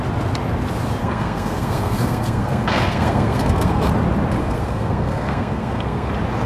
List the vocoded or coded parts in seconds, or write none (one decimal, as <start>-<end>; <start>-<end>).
1.0-3.9; 4.4-6.1